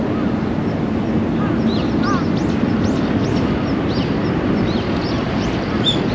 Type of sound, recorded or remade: recorded